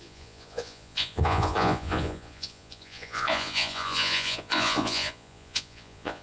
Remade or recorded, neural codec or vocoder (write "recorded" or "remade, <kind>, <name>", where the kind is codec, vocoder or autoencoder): remade, vocoder, Vocos